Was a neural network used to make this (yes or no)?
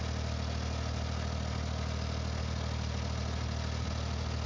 no